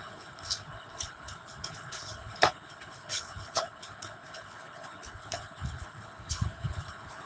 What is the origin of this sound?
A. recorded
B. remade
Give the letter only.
B